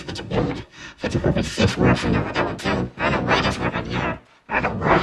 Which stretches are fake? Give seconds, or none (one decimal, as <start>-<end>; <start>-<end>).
0.0-1.7; 4.5-5.0